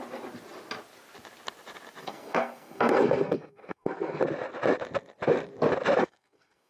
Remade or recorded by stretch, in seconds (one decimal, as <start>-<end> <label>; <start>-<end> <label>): 0.0-2.0 recorded; 2.0-4.2 remade; 4.2-6.0 recorded; 6.0-6.7 remade